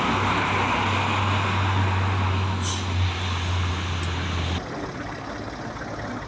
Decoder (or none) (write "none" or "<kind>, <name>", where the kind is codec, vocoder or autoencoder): none